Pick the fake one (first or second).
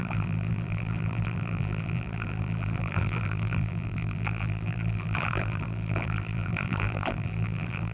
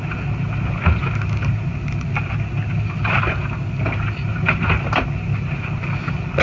first